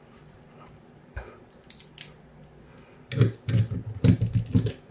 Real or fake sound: real